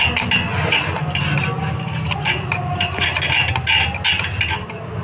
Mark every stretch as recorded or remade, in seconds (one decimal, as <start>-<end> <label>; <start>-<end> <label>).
0.0-5.0 recorded